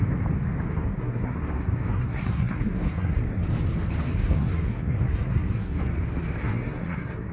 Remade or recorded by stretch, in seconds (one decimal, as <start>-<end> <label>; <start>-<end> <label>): 0.0-0.7 recorded; 0.7-3.4 remade; 3.4-4.1 recorded; 4.1-5.9 remade; 5.9-6.4 recorded; 6.4-7.3 remade